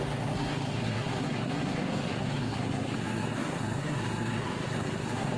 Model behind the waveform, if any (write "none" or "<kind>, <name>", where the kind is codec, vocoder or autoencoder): codec, SNAC